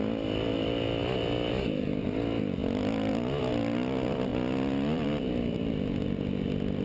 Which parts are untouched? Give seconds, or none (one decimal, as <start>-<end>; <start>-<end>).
0.0-4.3; 5.7-6.8